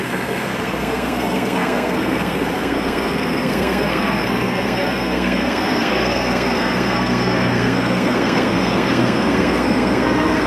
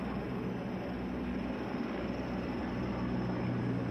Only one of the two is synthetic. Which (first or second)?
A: first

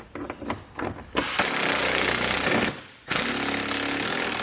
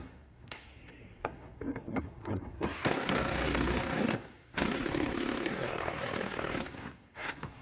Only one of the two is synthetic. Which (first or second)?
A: second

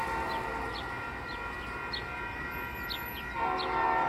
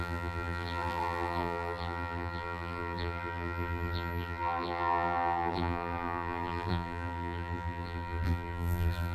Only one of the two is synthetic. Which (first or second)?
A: second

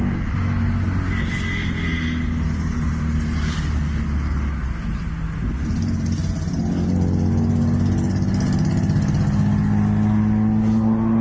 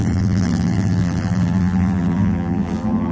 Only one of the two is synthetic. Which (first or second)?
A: second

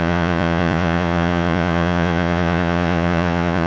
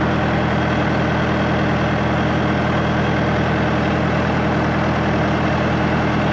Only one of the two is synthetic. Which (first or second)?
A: first